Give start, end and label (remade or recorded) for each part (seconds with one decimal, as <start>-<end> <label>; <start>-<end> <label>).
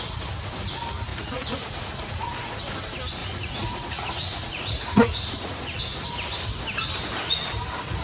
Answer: 0.0-1.1 recorded; 1.1-2.7 remade; 2.7-3.2 recorded; 3.2-5.8 remade; 5.8-8.0 recorded